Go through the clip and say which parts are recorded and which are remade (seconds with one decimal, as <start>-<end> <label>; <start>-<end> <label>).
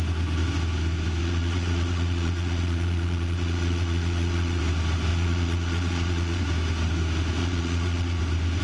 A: 0.0-1.2 recorded; 1.2-4.6 remade; 4.6-5.1 recorded; 5.1-6.4 remade; 6.4-7.4 recorded; 7.4-8.2 remade; 8.2-8.6 recorded